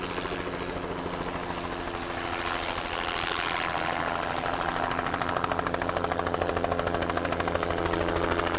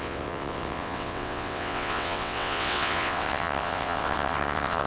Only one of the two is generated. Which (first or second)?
second